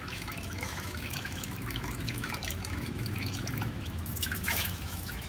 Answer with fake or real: fake